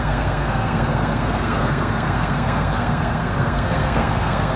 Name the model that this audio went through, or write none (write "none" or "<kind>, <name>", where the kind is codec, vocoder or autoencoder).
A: codec, SNAC